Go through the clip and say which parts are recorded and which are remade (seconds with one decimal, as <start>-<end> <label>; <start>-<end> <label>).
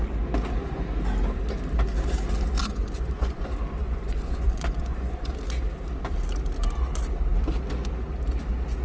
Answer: 0.0-2.6 recorded; 2.6-3.4 remade; 3.4-3.8 recorded; 3.8-5.3 remade; 5.3-8.8 recorded